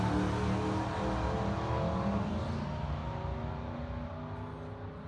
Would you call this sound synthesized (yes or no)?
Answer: no